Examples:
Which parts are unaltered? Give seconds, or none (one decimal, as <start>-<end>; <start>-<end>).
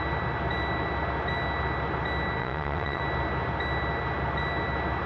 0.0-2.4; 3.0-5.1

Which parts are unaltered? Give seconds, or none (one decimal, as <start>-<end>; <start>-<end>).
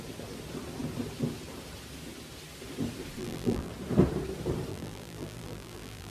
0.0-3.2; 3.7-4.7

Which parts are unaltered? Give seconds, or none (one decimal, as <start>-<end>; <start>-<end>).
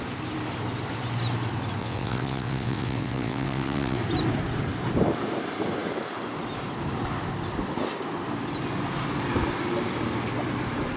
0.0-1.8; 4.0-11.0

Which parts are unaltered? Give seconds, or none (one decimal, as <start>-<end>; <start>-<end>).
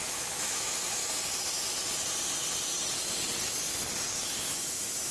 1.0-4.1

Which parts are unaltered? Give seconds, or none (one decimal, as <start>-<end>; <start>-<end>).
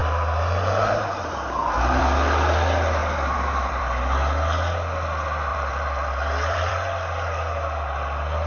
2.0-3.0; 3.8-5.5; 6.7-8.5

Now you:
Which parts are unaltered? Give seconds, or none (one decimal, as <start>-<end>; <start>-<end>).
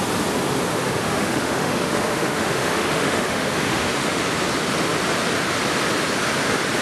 0.0-0.7; 4.2-6.8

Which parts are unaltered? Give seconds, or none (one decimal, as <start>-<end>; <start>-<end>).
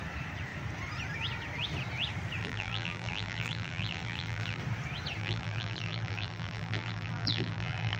0.0-2.4; 4.6-5.2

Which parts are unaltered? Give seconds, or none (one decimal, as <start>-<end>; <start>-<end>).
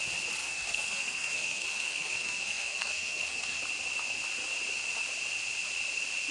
0.0-0.4; 3.6-6.3